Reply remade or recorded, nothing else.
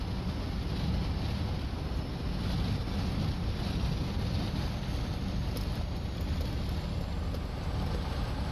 recorded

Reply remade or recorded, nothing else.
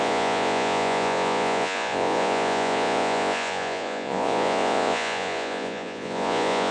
remade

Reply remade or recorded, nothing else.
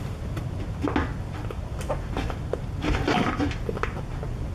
recorded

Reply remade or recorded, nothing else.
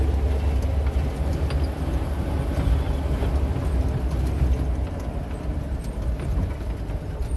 recorded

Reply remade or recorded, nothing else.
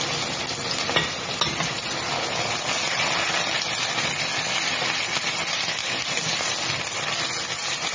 recorded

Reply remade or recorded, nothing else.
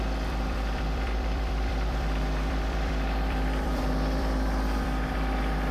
remade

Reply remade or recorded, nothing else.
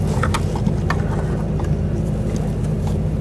recorded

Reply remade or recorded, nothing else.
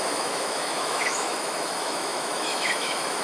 remade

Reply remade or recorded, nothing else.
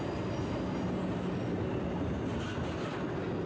recorded